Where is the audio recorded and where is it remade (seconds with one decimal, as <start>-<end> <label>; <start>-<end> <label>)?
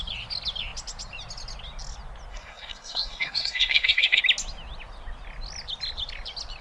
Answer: 0.0-2.3 recorded; 2.3-4.2 remade; 4.2-6.6 recorded